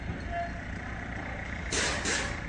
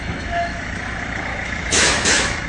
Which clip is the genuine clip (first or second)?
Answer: first